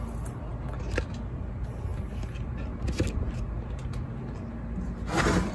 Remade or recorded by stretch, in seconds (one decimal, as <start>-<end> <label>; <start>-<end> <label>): 0.0-5.5 recorded